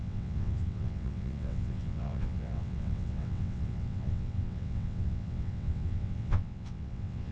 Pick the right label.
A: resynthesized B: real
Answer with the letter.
A